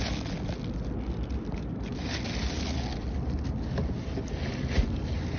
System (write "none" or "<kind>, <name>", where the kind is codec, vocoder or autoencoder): none